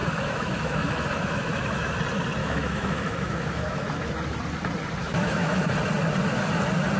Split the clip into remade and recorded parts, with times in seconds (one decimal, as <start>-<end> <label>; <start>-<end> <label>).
0.0-1.9 remade; 1.9-2.4 recorded; 2.4-4.1 remade; 4.1-5.0 recorded; 5.0-5.7 remade; 5.7-7.0 recorded